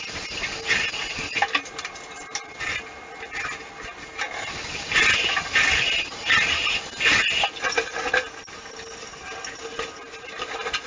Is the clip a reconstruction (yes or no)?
no